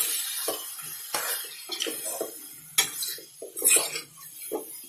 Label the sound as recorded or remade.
recorded